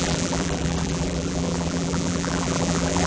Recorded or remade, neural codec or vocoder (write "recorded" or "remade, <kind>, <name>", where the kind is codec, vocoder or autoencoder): remade, vocoder, BigVGAN v2